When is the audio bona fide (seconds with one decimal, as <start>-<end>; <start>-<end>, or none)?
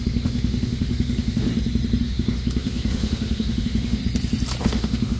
1.5-2.0; 4.0-4.6